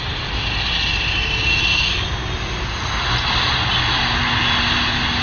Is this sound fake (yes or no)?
no